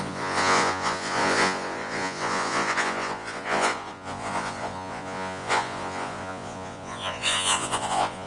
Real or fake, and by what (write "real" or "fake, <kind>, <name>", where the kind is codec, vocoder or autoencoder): fake, vocoder, Vocos